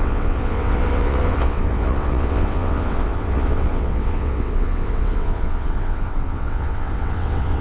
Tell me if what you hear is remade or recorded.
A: remade